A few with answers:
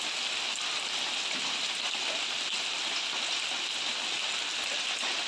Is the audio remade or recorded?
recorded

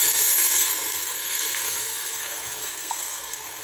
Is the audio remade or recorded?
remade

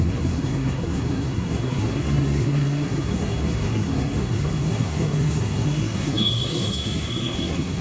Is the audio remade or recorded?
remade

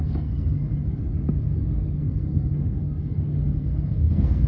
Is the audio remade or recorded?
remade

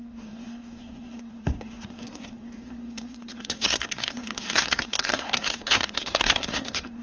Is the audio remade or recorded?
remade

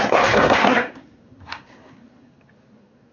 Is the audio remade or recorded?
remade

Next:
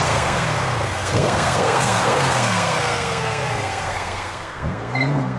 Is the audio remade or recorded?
remade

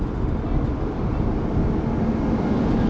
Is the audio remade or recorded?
recorded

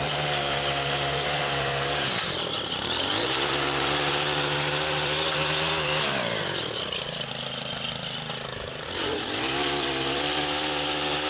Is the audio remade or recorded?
recorded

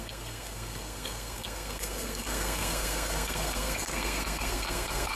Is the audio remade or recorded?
remade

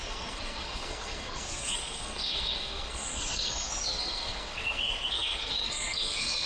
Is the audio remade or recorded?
remade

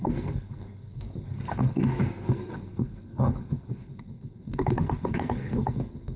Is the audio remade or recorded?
remade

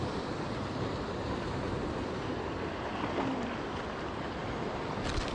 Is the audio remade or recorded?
recorded